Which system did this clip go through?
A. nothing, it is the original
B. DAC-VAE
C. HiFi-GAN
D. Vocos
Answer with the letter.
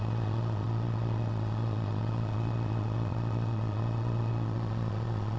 D